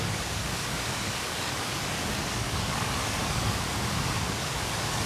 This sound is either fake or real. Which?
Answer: fake